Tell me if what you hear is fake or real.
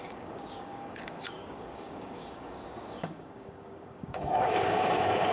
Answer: fake